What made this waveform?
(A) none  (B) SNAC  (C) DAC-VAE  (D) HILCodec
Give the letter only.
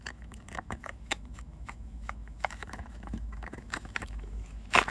C